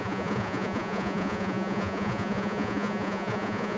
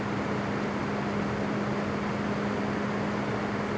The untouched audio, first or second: second